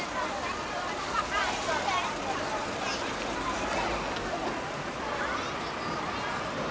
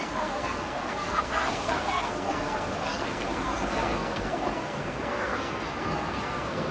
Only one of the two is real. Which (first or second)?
first